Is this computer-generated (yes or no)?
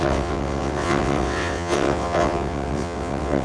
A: yes